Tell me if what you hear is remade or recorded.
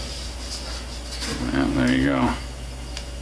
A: recorded